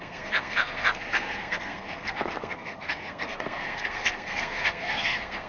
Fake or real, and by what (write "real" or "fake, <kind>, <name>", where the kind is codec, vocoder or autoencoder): fake, codec, SNAC